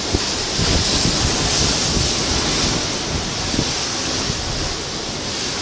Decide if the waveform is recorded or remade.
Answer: recorded